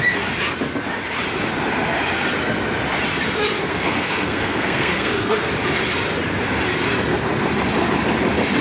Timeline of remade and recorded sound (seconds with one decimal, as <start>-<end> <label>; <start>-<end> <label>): 0.0-3.7 recorded; 3.7-5.5 remade; 5.5-8.6 recorded